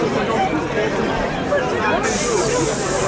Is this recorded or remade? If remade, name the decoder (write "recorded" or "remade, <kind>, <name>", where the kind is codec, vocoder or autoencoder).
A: recorded